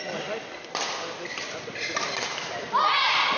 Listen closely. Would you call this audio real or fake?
real